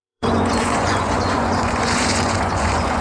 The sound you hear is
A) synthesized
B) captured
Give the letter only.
A